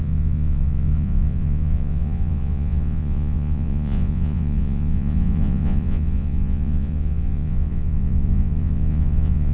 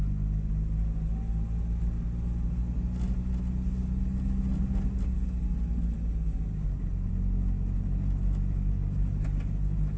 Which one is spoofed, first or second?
first